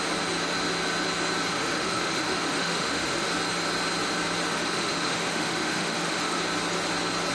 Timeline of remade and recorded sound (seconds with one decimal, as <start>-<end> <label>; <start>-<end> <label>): 0.0-1.5 recorded; 1.5-3.3 remade; 3.3-4.5 recorded; 4.5-6.4 remade; 6.4-7.3 recorded